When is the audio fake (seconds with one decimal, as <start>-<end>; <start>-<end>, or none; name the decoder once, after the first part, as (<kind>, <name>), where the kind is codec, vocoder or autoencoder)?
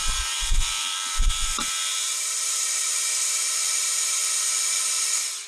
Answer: 0.0-4.2 (vocoder, BigVGAN v2); 5.0-5.5